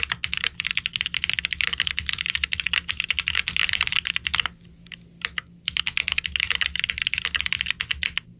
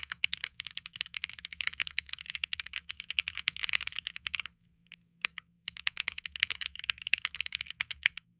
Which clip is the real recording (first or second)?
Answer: first